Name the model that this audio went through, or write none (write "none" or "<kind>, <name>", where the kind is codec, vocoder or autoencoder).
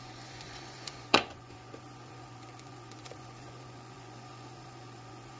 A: vocoder, Vocos